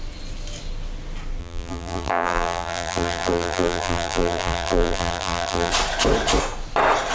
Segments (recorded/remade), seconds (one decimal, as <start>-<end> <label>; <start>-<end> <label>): 0.0-1.4 recorded; 1.4-5.7 remade; 5.7-7.1 recorded